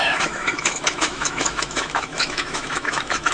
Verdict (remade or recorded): remade